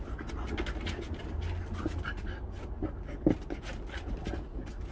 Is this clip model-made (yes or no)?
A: no